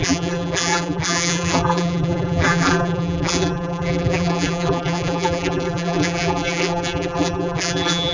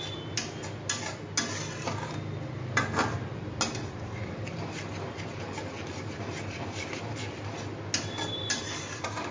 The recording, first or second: second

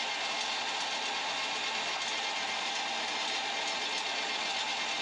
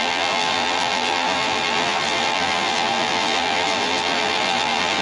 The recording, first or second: first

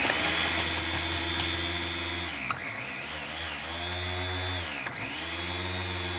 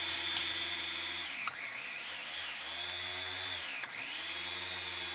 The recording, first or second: first